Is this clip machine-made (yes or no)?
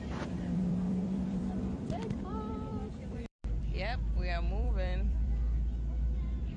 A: yes